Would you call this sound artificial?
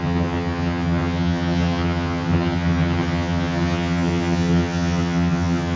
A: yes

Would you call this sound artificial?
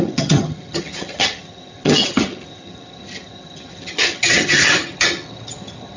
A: yes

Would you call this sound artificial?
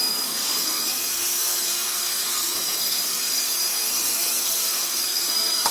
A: yes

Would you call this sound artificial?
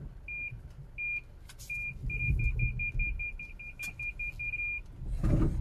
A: no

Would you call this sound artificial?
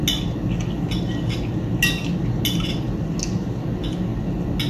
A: no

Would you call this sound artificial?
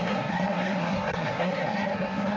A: yes